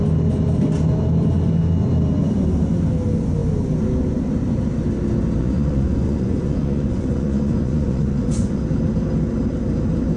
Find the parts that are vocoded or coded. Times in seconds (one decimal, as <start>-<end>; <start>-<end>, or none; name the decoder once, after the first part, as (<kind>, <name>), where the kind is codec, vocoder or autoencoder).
5.4-8.6 (vocoder, Vocos)